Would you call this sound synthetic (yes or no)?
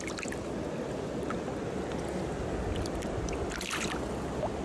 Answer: no